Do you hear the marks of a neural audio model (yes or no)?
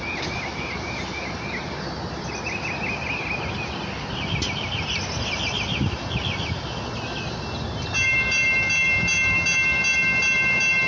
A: no